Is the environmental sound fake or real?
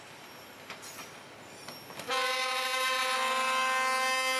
real